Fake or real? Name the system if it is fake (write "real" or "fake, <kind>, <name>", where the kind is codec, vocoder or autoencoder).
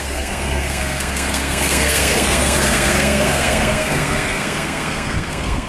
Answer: fake, codec, SNAC